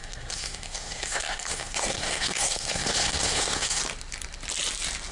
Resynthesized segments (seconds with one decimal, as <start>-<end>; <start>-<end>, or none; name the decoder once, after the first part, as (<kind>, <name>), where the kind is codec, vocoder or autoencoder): 0.0-3.8 (codec, SNAC)